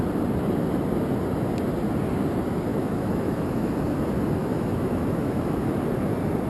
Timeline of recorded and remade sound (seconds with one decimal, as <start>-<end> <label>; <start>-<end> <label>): 0.0-2.7 recorded; 2.7-3.7 remade; 3.7-4.5 recorded; 4.5-5.7 remade; 5.7-6.5 recorded